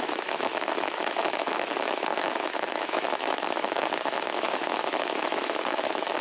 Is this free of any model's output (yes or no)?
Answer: no